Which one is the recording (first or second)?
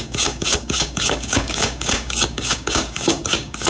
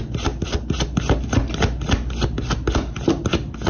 second